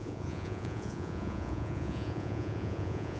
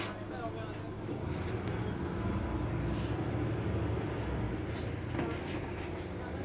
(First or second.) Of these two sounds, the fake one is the first